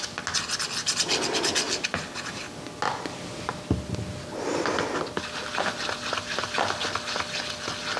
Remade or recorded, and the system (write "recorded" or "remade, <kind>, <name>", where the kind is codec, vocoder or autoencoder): recorded